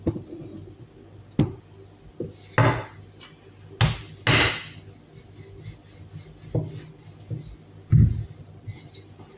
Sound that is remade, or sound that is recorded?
recorded